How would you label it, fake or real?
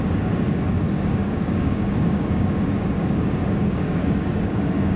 fake